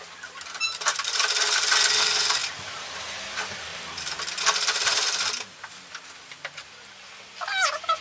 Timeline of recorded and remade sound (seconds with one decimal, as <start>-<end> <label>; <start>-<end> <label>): 0.0-2.4 recorded; 2.4-3.3 remade; 3.3-3.7 recorded; 3.7-6.0 remade; 6.0-8.0 recorded